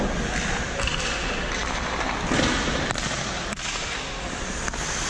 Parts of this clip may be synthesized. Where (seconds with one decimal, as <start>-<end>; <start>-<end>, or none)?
none